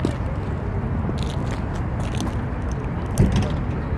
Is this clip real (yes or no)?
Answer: yes